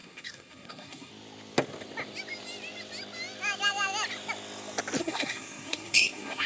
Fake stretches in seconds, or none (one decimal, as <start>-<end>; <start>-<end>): 0.0-1.1; 5.0-6.5